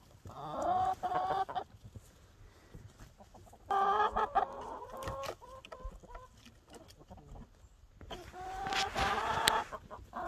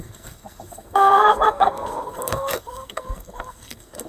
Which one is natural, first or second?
first